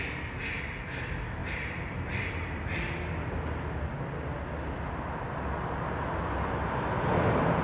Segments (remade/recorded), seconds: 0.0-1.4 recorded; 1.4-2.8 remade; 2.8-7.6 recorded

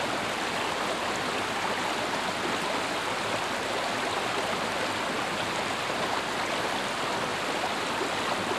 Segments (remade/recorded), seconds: 0.0-7.3 recorded; 7.3-8.2 remade; 8.2-8.6 recorded

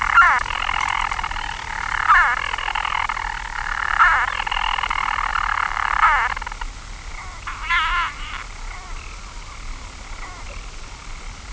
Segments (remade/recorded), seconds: 0.0-11.5 remade

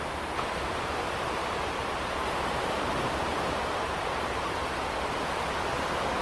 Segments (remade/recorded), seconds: 0.0-6.2 remade

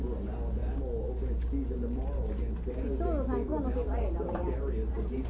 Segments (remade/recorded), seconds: 0.0-3.5 recorded; 3.5-4.7 remade; 4.7-5.3 recorded